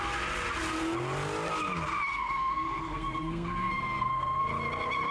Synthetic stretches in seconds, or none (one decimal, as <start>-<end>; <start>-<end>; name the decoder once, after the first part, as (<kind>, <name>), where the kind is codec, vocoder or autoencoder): 2.1-4.4 (codec, SNAC)